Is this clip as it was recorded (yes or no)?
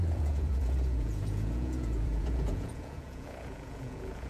no